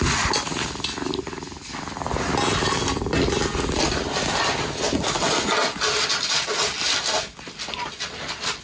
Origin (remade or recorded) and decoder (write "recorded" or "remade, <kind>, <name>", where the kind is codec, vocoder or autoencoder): recorded